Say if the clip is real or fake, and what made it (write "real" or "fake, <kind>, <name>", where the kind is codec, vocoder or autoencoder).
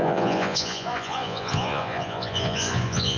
fake, vocoder, Vocos